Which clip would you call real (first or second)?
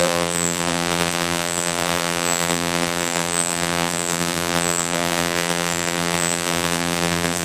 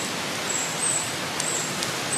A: second